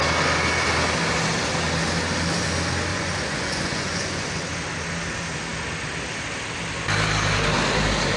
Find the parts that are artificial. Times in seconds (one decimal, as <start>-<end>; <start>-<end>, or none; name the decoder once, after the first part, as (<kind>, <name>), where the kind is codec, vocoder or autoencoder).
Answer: 2.9-4.4 (vocoder, Vocos)

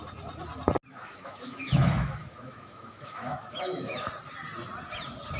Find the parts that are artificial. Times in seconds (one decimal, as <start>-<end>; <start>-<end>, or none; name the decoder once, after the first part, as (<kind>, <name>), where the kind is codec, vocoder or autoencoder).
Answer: 0.9-4.1 (autoencoder, DAC-VAE)

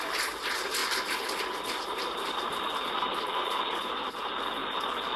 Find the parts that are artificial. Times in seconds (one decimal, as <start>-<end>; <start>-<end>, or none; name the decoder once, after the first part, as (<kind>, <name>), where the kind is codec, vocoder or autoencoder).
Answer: 0.8-3.9 (vocoder, BigVGAN v2); 4.6-5.2

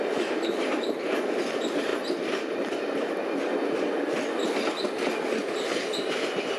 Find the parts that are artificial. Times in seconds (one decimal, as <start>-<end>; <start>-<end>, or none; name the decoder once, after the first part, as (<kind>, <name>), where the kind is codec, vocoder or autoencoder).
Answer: none

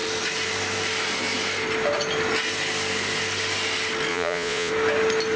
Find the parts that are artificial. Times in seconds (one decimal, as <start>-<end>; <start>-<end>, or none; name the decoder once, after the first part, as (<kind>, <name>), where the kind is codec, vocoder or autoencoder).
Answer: 4.1-4.7 (vocoder, Vocos)

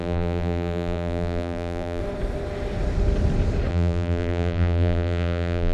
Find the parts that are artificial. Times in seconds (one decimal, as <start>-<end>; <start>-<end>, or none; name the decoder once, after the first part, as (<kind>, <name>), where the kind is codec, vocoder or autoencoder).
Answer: 0.0-2.0 (vocoder, BigVGAN v2); 3.7-5.7